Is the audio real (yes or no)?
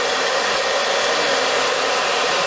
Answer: yes